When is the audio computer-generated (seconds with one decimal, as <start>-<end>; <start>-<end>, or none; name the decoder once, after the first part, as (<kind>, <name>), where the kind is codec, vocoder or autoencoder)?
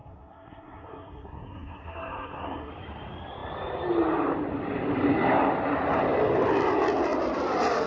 0.0-2.7 (codec, SNAC)